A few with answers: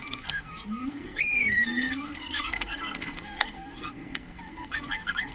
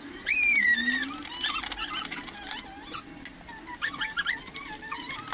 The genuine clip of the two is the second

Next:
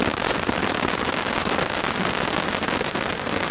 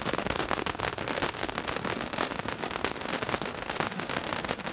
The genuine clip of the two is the first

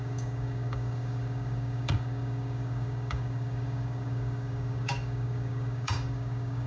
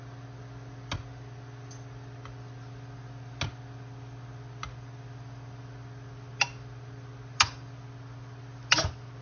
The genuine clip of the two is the second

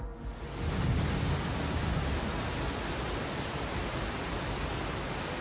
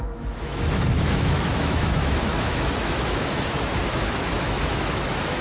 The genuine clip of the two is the first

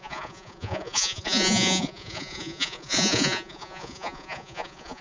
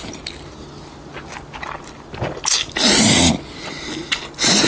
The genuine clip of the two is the second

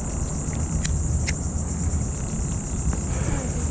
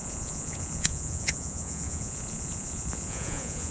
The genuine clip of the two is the first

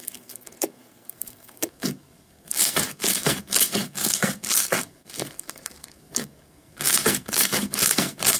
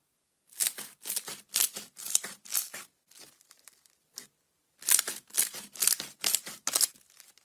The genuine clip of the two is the second